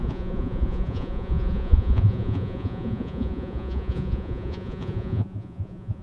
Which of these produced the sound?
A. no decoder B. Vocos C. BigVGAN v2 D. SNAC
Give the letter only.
B